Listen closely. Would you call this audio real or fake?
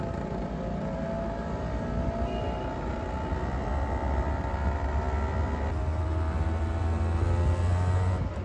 real